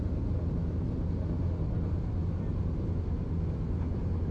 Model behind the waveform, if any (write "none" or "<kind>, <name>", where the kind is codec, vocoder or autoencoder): none